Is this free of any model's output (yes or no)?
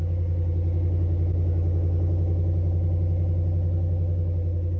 yes